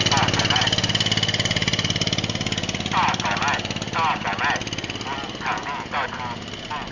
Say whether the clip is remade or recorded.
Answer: recorded